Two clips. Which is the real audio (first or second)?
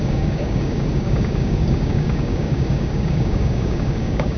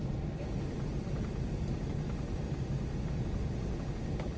second